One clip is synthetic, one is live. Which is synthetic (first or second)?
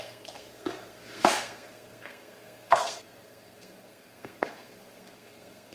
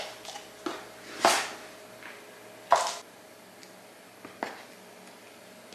first